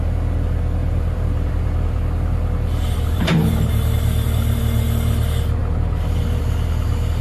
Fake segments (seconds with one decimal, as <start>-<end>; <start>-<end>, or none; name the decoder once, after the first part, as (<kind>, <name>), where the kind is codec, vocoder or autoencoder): 0.8-4.6 (vocoder, BigVGAN v2); 5.6-6.4